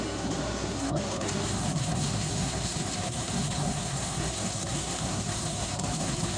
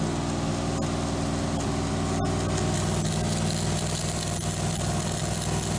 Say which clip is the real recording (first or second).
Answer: second